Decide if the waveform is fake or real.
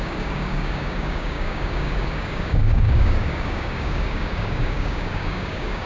fake